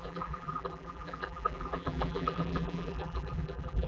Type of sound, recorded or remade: remade